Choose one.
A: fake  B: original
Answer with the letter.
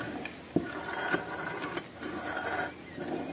B